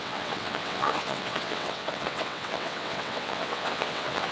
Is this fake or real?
fake